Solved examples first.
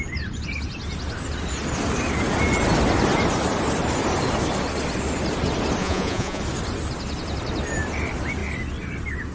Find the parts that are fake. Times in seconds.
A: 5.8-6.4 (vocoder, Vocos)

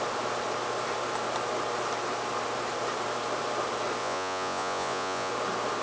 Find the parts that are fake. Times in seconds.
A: 4.0-5.3 (vocoder, Vocos)